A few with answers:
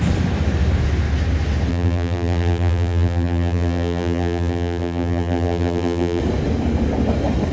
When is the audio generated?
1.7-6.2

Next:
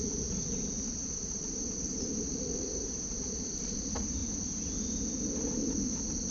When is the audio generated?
1.0-3.8

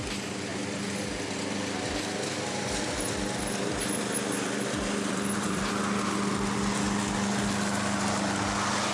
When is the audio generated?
0.5-5.7

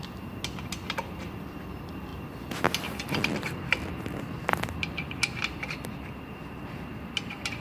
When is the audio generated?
none

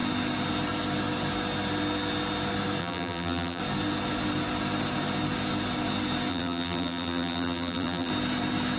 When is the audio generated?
2.8-3.6; 6.3-8.1

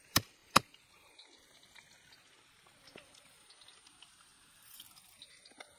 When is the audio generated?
4.3-4.9